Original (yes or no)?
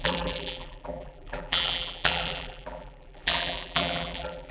no